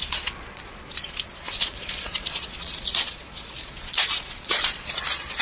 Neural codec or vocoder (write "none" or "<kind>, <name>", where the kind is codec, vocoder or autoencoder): vocoder, Vocos